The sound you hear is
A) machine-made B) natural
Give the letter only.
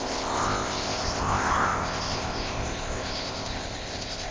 A